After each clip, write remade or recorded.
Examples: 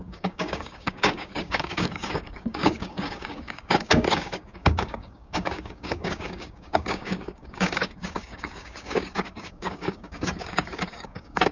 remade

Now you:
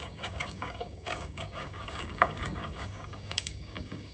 remade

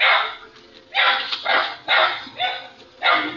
recorded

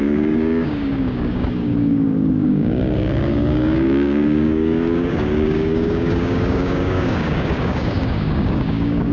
remade